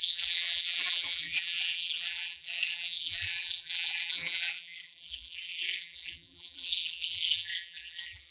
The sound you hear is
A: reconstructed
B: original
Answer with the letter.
A